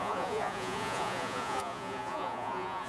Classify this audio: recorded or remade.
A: remade